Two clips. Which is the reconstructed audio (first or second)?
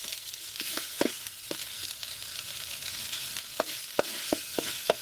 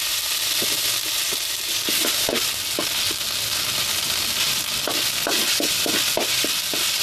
first